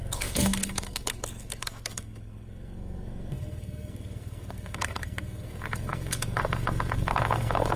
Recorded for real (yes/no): no